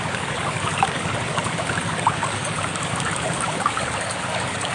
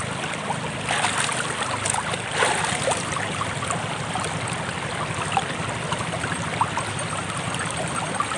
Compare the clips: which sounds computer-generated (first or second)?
first